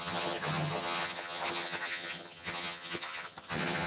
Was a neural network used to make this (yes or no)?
yes